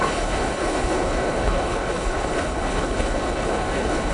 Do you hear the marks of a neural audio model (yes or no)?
yes